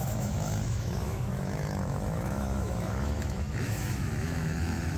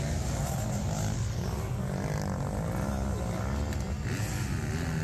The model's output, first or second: first